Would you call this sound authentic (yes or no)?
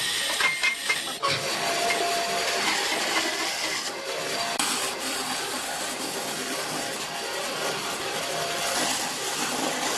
yes